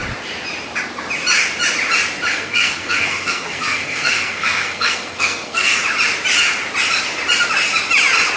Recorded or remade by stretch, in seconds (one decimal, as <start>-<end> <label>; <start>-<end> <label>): 0.0-2.3 recorded; 2.3-5.8 remade; 5.8-8.4 recorded